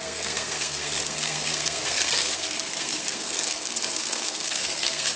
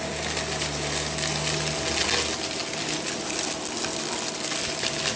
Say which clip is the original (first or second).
second